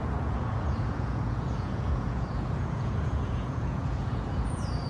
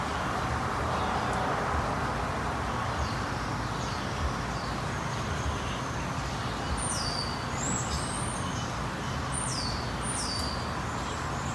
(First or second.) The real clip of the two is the second